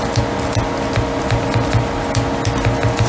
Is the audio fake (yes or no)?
no